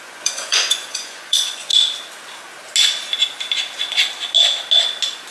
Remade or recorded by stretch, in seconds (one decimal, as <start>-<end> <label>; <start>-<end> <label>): 0.0-1.7 remade; 1.7-5.3 recorded

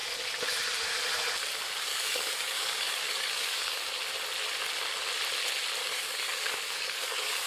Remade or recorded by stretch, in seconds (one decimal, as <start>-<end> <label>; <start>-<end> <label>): 0.0-1.9 recorded; 1.9-3.9 remade; 3.9-5.8 recorded; 5.8-7.5 remade

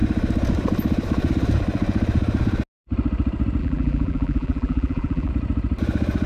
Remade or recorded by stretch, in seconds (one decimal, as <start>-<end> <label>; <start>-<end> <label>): 0.0-3.6 recorded; 3.6-5.3 remade; 5.3-6.3 recorded

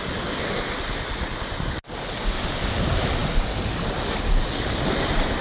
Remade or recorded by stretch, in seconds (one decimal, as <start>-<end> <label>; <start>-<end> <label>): 0.0-5.4 recorded